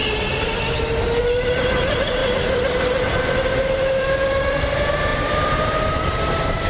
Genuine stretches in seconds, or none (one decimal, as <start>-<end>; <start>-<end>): 0.0-1.2; 2.2-3.3